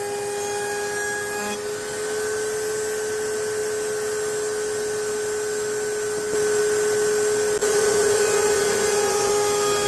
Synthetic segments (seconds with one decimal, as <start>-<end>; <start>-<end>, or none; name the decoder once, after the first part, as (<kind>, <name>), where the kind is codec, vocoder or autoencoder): 7.6-9.3 (vocoder, Vocos)